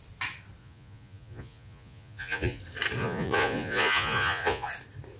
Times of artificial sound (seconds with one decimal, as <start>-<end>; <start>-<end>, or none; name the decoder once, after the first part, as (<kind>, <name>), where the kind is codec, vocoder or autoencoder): 0.6-2.6 (vocoder, Vocos); 3.0-4.7

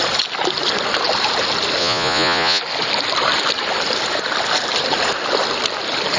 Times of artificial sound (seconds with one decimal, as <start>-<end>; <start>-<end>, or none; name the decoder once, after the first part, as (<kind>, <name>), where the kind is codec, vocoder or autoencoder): 1.8-2.6 (vocoder, Vocos)